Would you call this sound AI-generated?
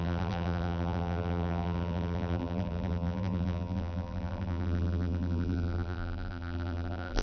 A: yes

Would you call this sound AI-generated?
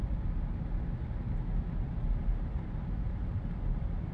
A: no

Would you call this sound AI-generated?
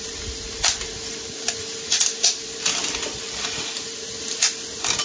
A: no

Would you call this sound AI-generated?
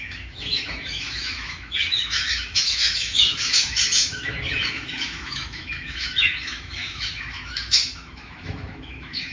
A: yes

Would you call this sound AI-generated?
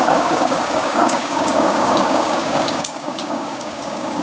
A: yes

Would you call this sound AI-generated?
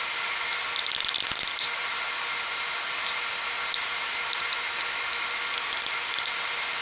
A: no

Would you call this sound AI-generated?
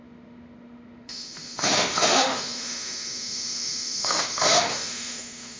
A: yes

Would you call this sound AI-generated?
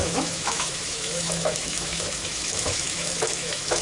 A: yes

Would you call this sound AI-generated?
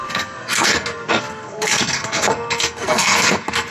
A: yes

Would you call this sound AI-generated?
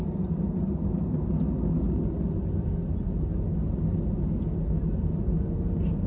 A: no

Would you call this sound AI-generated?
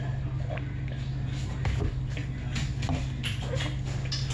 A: no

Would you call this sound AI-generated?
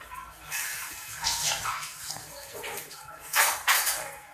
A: yes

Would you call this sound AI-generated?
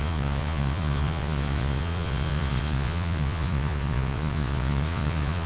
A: yes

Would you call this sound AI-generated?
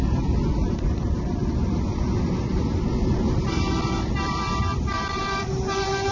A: yes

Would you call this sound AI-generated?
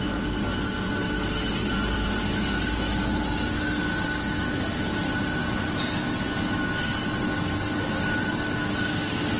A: no